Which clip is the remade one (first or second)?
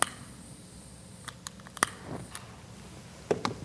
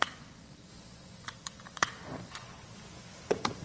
second